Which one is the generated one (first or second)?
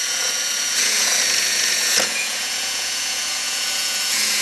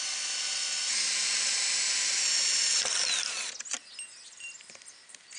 first